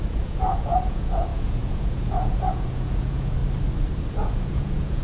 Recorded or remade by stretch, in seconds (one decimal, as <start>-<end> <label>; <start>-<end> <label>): 0.0-3.4 remade; 3.4-4.1 recorded; 4.1-5.0 remade